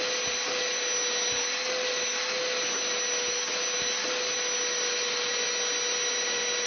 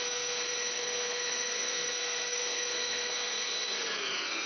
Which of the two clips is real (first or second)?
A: first